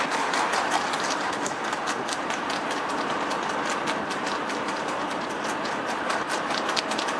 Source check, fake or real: real